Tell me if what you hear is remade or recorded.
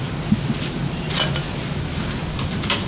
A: recorded